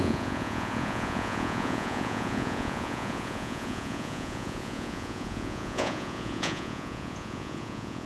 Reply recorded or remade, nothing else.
remade